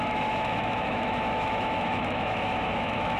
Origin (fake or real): fake